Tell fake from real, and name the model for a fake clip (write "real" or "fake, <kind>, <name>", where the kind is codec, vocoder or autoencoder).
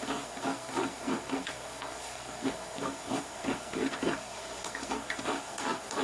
fake, codec, SNAC